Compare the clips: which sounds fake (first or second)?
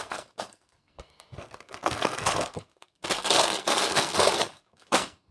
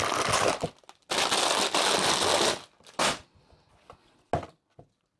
first